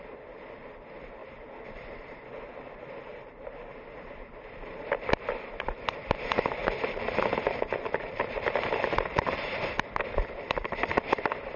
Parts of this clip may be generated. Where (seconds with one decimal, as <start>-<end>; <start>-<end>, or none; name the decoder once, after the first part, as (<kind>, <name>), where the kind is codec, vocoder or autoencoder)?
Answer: 3.1-3.8 (vocoder, BigVGAN v2); 6.6-9.8